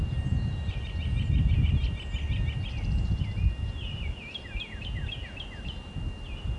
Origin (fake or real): real